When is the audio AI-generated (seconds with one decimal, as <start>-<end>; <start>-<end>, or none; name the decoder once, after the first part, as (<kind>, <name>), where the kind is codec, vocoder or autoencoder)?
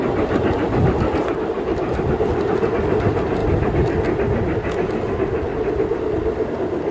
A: none